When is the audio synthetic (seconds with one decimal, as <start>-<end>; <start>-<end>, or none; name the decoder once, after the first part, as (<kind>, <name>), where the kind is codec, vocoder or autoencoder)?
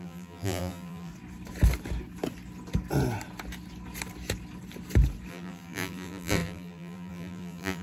0.0-1.1 (vocoder, BigVGAN v2); 5.3-7.8